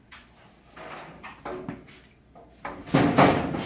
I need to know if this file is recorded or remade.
recorded